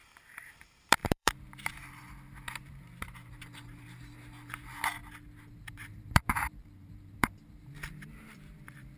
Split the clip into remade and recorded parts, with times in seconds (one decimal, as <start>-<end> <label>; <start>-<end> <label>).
0.0-0.6 recorded; 0.6-5.0 remade; 5.0-5.5 recorded; 5.5-9.0 remade